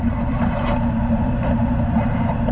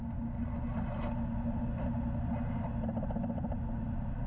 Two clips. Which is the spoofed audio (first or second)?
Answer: first